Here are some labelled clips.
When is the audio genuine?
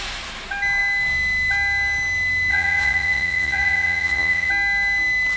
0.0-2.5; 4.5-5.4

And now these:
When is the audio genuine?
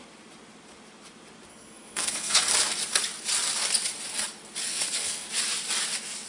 0.0-1.5; 2.5-4.7; 5.3-6.3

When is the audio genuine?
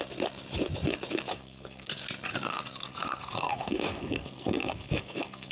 0.0-1.3; 1.9-2.9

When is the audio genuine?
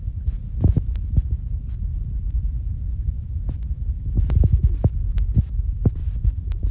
0.0-6.7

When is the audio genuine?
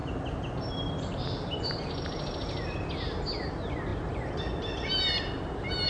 0.0-5.9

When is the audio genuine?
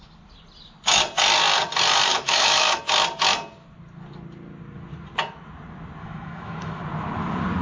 0.0-2.1; 2.8-6.0; 6.8-7.6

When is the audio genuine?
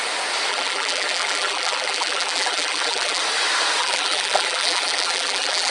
0.0-0.5; 3.2-3.8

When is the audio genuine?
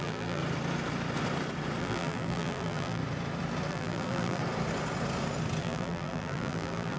0.4-1.8; 3.0-3.7; 4.4-5.6